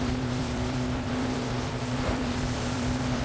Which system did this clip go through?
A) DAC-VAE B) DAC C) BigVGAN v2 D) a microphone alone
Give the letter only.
C